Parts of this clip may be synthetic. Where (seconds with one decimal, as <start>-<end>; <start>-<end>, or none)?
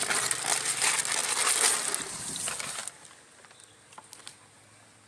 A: none